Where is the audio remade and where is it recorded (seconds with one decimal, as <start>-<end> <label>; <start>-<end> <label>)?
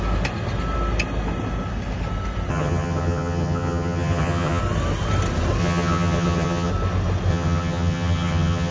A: 0.0-2.5 recorded; 2.5-4.6 remade; 4.6-5.6 recorded; 5.6-6.7 remade; 6.7-7.3 recorded; 7.3-8.7 remade